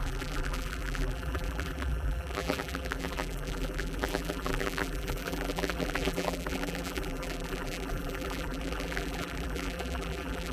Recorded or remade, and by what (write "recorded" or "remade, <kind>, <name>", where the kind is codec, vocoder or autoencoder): remade, vocoder, BigVGAN v2